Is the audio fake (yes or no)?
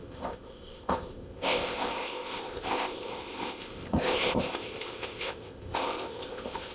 yes